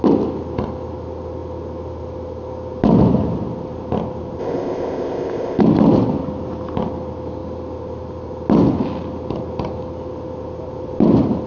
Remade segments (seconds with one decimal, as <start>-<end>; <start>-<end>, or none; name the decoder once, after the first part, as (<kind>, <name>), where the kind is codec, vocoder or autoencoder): 4.4-5.6 (codec, ZipCodec)